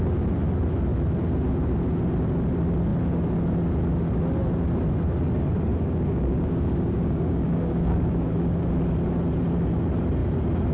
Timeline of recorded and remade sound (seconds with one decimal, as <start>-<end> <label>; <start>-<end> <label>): 0.0-5.7 recorded; 5.7-8.7 remade; 8.7-10.7 recorded